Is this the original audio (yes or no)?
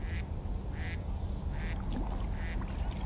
yes